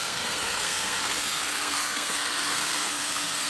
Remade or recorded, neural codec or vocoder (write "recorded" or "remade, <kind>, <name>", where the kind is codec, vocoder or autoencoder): remade, codec, SNAC